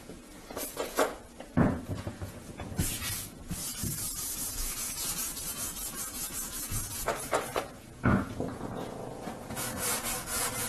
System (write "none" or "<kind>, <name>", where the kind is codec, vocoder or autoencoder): vocoder, Vocos